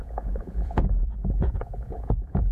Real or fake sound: fake